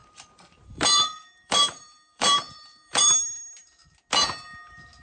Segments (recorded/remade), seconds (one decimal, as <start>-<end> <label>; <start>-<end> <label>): 0.0-3.0 remade; 3.0-5.0 recorded